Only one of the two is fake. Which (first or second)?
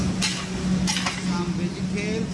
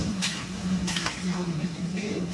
second